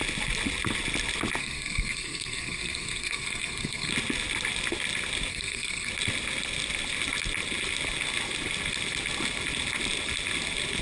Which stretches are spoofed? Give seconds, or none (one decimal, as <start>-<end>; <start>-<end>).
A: 1.4-3.9; 5.3-5.9